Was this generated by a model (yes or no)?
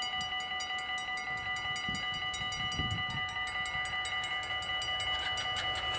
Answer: no